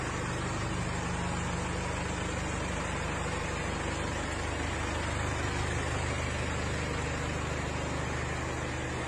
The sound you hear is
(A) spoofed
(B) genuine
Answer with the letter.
B